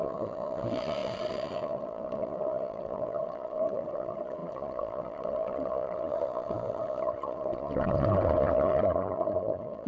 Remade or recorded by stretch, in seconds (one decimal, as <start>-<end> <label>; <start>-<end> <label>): 0.0-9.9 remade